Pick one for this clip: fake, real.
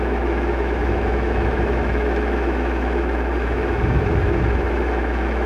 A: fake